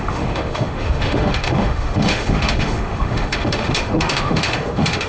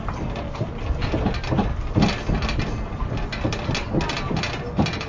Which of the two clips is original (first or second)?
second